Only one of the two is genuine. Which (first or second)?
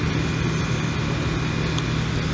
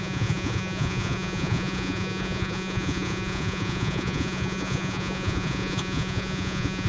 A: first